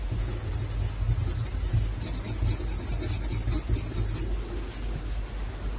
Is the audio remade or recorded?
recorded